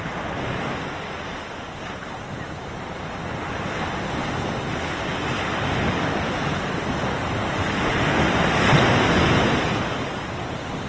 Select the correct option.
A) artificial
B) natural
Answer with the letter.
B